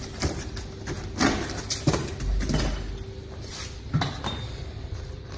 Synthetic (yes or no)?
no